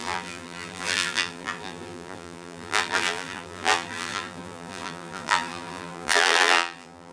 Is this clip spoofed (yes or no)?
yes